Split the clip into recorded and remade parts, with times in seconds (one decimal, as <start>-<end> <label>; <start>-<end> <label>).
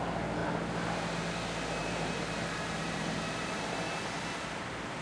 0.0-1.8 recorded; 1.8-3.8 remade; 3.8-5.0 recorded